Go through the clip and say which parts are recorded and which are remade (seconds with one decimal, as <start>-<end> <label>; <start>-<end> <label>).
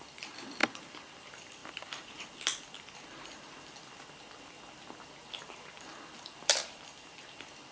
0.0-0.6 remade; 0.6-1.2 recorded; 1.2-1.6 remade; 1.6-6.2 recorded; 6.2-7.7 remade